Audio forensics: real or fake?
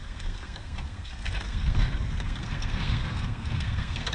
fake